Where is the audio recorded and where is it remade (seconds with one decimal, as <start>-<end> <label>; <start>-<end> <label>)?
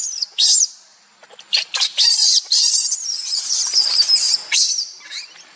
0.0-0.9 recorded; 0.9-4.2 remade; 4.2-5.6 recorded